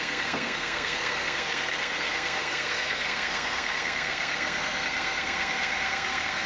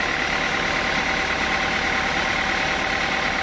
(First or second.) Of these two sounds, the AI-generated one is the first